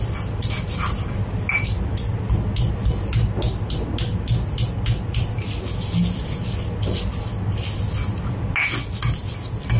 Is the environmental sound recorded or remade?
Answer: recorded